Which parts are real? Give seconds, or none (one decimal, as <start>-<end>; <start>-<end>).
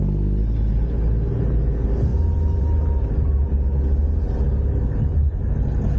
0.0-2.1; 2.8-6.0